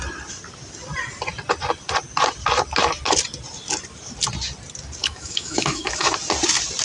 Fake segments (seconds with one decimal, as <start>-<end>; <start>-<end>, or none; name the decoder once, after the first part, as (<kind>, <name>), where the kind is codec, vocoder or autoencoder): 5.0-6.1 (autoencoder, DAC-VAE)